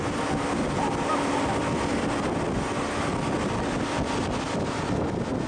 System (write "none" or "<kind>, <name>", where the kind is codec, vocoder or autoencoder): none